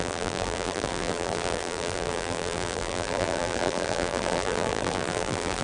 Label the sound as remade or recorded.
remade